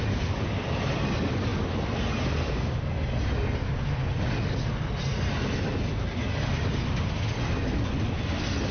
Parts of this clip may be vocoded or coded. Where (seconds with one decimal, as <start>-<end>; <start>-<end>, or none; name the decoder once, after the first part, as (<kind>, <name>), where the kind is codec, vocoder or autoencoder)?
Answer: none